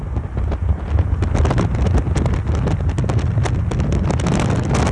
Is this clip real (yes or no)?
yes